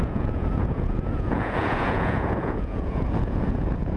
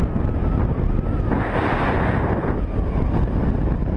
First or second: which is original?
second